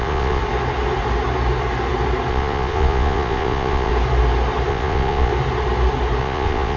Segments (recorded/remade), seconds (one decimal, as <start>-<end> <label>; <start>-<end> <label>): 0.0-0.4 remade; 0.4-2.3 recorded; 2.3-3.9 remade; 3.9-4.7 recorded; 4.7-5.3 remade; 5.3-6.2 recorded; 6.2-6.8 remade